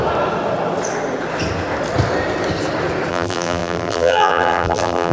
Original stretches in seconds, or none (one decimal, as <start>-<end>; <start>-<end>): 0.0-3.1